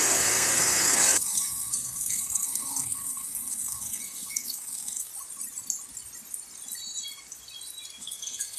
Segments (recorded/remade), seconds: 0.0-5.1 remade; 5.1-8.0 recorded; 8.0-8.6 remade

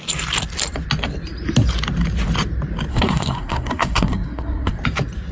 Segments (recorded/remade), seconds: 0.0-2.9 recorded; 2.9-4.8 remade; 4.8-5.3 recorded